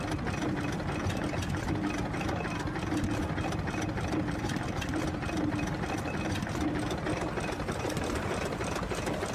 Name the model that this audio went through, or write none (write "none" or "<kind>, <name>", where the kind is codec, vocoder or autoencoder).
none